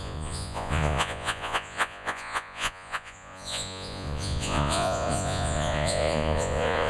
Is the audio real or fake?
fake